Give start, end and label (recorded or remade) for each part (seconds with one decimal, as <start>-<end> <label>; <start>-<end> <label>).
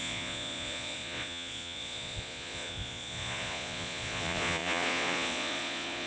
0.0-6.1 remade